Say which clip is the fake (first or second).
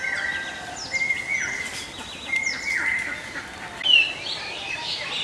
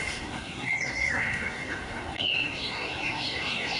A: second